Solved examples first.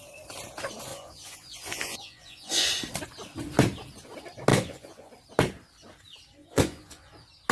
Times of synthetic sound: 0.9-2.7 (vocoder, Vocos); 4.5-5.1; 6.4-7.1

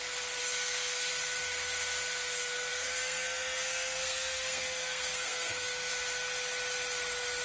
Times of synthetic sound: 0.4-1.1 (codec, SNAC); 2.7-5.9

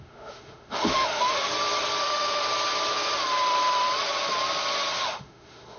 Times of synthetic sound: 0.0-1.5 (autoencoder, DAC-VAE); 2.0-2.4; 5.0-5.8